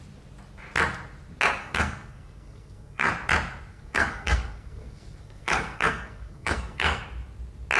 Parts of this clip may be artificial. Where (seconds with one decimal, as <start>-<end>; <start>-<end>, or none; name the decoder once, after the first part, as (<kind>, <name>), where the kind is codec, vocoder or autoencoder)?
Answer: 1.6-3.1 (codec, SNAC); 3.7-7.0